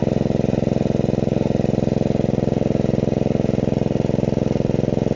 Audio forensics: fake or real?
real